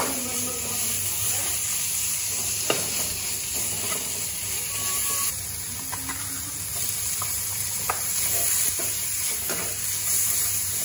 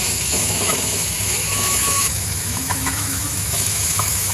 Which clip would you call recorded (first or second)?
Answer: first